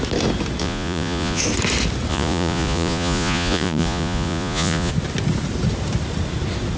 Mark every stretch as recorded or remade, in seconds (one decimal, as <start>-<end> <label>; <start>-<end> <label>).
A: 0.0-0.6 recorded; 0.6-1.4 remade; 1.4-2.1 recorded; 2.1-4.9 remade; 4.9-6.8 recorded